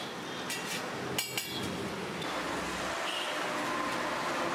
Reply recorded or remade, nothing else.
recorded